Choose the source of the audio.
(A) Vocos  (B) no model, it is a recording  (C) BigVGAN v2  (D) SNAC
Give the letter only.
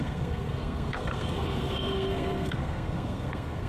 D